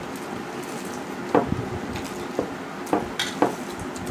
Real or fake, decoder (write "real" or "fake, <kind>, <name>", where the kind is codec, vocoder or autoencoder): real